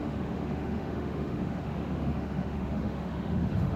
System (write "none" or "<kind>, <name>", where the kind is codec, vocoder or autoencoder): autoencoder, DAC-VAE